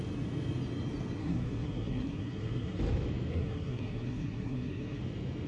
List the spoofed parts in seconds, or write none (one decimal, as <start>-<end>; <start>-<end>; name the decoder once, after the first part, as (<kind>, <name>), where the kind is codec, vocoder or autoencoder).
1.2-2.8 (codec, SNAC); 3.3-5.0